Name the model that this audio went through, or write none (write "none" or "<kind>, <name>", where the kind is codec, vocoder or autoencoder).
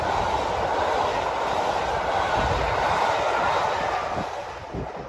none